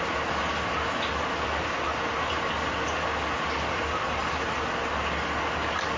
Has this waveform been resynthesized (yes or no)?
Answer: no